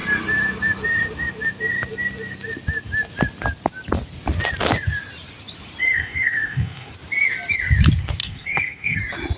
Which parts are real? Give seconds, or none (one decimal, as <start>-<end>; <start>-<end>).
0.0-5.8; 6.9-8.2; 9.0-9.4